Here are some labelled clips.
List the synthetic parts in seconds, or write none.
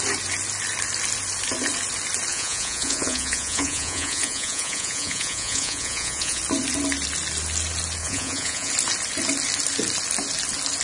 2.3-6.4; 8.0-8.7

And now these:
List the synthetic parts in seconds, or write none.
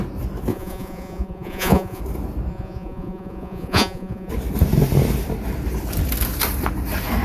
0.5-2.0; 2.5-4.3